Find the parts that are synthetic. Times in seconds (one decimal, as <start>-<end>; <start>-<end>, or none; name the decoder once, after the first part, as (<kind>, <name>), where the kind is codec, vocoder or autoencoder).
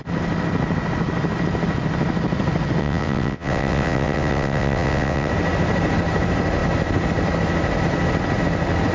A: 2.8-5.3 (vocoder, WaveNeXt)